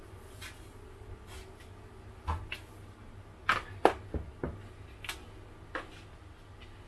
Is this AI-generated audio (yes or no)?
no